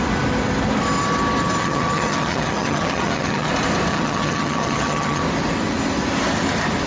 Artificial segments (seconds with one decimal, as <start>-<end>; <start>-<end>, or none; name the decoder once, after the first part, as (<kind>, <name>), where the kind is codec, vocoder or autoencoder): 1.6-3.5 (vocoder, HiFi-GAN); 3.9-5.2